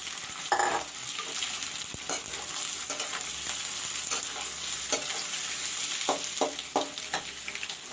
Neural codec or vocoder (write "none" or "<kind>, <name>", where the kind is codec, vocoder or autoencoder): none